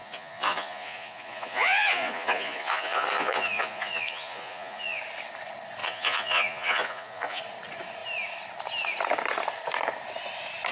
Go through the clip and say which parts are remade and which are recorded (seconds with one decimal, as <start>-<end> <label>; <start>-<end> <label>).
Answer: 0.0-5.0 remade; 5.0-5.8 recorded; 5.8-7.4 remade; 7.4-10.7 recorded